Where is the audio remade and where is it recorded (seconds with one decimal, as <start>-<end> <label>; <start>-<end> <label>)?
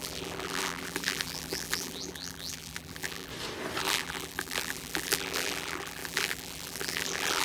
0.0-3.3 remade; 3.3-3.8 recorded; 3.8-7.4 remade